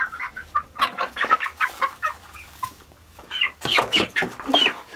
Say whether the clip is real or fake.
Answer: fake